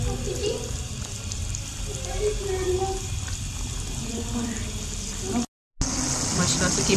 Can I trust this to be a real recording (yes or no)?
yes